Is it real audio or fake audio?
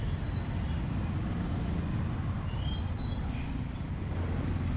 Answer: real